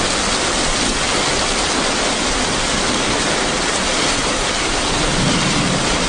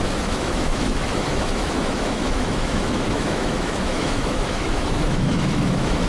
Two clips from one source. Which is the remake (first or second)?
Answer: second